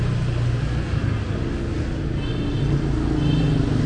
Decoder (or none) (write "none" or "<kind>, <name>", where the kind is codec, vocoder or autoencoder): none